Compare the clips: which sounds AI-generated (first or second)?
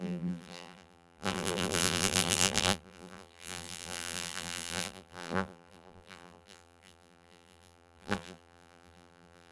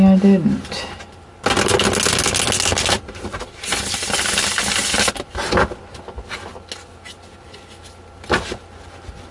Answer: first